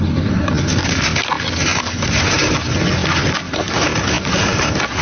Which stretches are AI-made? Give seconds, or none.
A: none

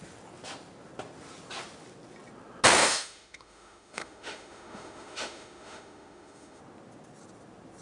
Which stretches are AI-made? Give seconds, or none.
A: 2.8-6.6 (autoencoder, DAC-VAE)

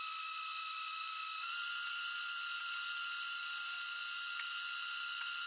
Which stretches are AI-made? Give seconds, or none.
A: 0.0-4.0 (vocoder, BigVGAN v2)

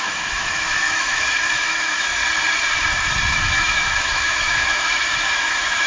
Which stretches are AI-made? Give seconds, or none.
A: 0.0-2.2 (autoencoder, DAC-VAE); 3.3-5.9

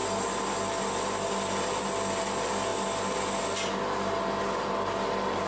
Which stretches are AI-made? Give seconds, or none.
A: none

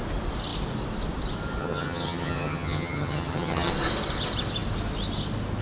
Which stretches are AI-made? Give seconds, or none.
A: 1.6-3.7 (vocoder, HiFi-GAN)

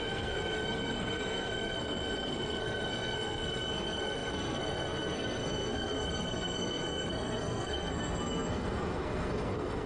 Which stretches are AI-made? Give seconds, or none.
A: 0.0-9.9 (codec, SNAC)